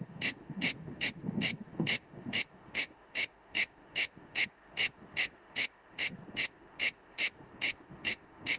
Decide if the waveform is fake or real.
fake